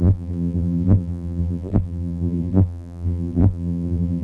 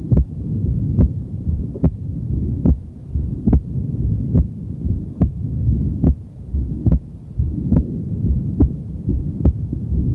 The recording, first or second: second